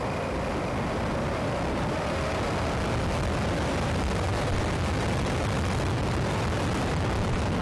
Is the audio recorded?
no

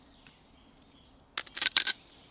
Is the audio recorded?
yes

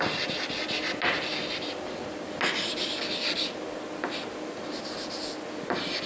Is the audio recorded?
yes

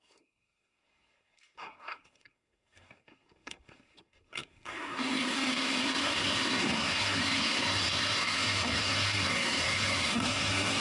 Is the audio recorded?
no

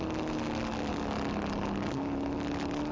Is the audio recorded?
yes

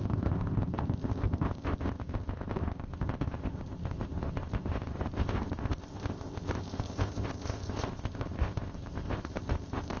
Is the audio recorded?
no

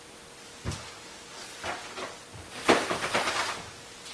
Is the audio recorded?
yes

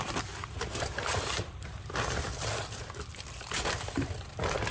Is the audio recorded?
no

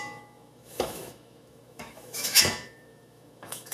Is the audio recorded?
no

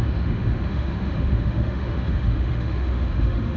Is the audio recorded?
no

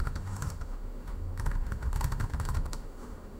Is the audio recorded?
no